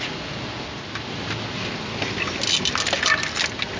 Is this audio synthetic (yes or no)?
no